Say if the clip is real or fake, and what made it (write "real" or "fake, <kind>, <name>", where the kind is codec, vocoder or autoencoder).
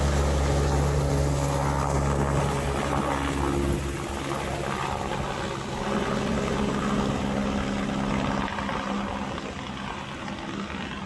real